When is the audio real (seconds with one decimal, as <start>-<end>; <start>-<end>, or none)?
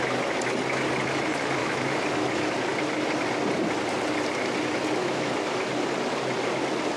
0.0-1.6; 2.5-5.0; 5.7-7.0